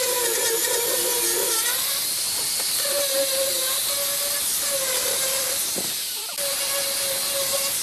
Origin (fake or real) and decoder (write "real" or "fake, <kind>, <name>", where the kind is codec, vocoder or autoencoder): real